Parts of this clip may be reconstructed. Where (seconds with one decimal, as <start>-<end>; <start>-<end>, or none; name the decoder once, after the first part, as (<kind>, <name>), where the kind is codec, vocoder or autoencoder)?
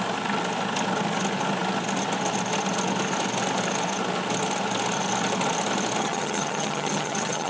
6.0-7.5 (vocoder, HiFi-GAN)